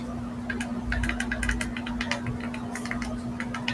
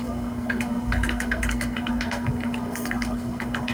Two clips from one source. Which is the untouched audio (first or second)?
first